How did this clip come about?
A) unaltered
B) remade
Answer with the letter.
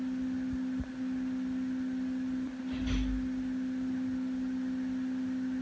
A